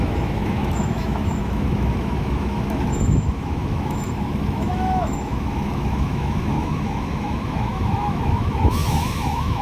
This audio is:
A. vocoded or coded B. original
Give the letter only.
A